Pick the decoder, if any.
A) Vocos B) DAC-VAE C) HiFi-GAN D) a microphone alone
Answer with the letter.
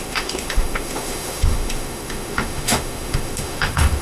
B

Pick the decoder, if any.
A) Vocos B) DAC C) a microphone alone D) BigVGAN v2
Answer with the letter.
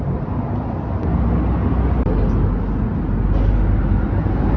C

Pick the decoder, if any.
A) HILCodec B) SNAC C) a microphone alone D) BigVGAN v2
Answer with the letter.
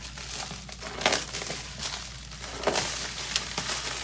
C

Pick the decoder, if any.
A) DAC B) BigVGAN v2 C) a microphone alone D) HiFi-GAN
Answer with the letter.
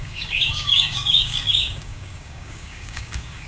A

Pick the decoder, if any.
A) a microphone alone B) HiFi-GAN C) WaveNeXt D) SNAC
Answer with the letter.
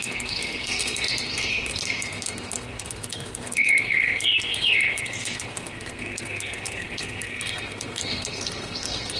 D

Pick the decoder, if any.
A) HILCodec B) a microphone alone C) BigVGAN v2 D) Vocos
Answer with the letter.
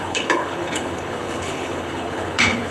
A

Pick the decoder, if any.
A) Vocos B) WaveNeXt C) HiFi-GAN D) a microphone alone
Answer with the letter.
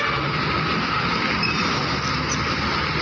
D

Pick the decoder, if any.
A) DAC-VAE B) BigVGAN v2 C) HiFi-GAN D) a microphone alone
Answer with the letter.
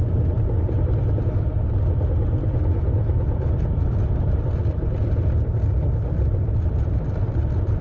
B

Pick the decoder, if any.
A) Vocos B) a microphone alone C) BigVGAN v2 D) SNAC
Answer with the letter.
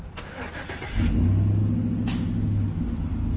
B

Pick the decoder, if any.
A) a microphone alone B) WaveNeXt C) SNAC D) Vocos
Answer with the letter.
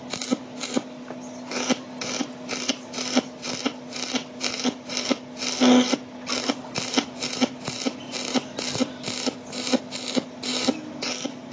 A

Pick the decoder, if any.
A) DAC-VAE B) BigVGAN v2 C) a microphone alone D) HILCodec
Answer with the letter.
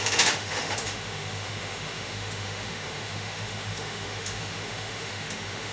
A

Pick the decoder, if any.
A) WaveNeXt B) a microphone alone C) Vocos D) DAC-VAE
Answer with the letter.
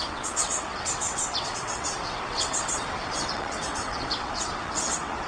A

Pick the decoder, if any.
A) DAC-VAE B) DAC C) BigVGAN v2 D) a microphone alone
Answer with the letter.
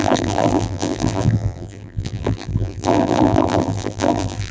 C